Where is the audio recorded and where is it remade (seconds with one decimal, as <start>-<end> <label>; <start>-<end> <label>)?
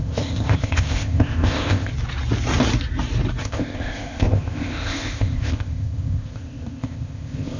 0.0-1.9 remade; 1.9-3.4 recorded; 3.4-7.6 remade